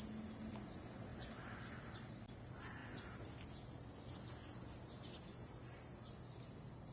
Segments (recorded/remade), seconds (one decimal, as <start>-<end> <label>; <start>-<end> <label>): 0.0-6.9 recorded